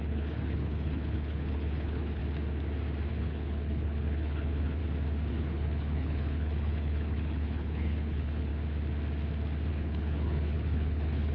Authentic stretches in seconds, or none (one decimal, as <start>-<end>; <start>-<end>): 2.2-3.1; 4.8-5.3; 8.5-9.7